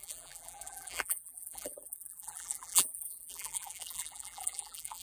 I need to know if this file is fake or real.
fake